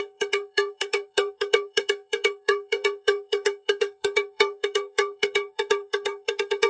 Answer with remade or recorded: remade